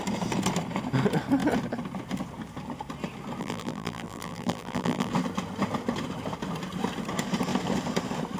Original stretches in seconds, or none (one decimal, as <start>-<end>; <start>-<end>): 0.0-3.4; 5.1-8.4